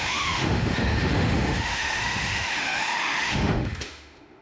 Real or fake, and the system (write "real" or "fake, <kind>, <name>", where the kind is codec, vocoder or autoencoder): fake, autoencoder, DAC-VAE